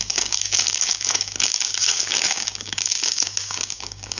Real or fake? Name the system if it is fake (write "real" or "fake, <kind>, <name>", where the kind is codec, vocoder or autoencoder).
fake, codec, DAC